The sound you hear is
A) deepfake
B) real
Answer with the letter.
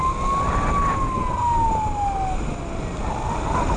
B